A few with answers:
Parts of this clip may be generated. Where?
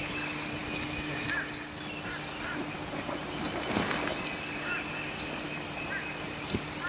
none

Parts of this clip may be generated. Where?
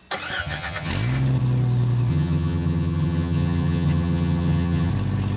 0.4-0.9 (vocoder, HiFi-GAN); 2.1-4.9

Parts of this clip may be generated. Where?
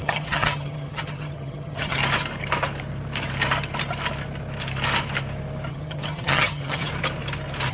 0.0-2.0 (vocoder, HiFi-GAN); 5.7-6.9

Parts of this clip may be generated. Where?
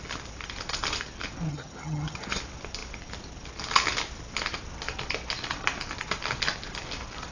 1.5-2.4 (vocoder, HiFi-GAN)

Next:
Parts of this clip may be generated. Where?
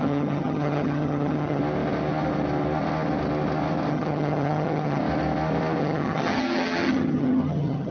0.0-1.6 (vocoder, HiFi-GAN); 3.9-5.0; 5.8-7.9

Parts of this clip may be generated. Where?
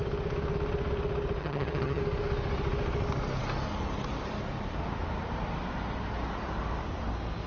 1.4-2.0 (vocoder, HiFi-GAN)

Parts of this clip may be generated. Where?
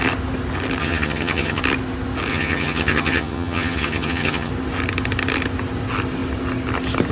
0.8-1.6 (vocoder, HiFi-GAN); 2.3-4.5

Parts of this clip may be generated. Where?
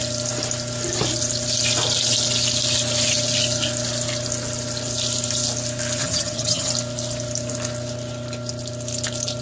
6.0-6.7 (vocoder, HiFi-GAN)